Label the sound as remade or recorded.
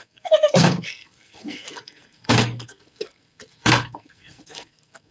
remade